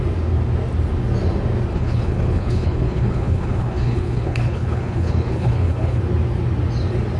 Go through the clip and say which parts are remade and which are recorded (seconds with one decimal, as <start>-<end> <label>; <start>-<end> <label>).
0.0-1.7 recorded; 1.7-6.0 remade; 6.0-7.2 recorded